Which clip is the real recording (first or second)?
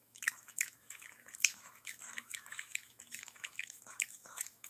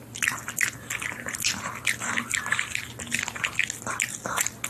second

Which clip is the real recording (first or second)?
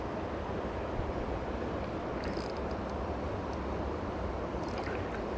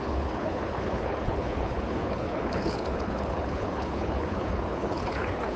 first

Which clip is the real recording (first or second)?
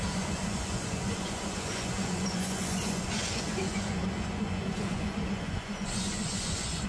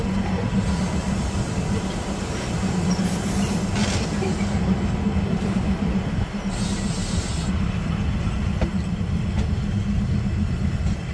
second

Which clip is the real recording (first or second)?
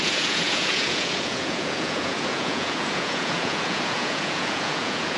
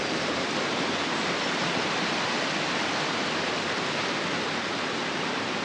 second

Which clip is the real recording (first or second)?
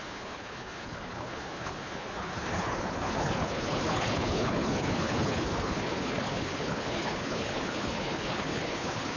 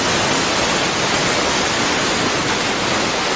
second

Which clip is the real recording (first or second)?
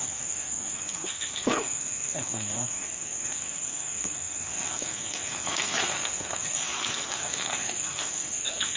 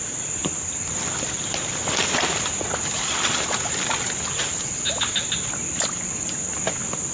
second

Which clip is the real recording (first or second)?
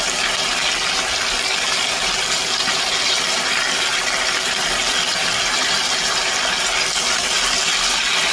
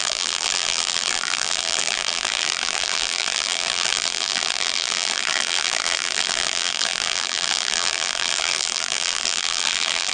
first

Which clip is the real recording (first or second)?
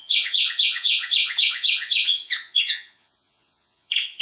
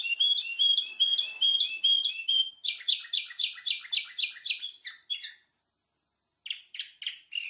second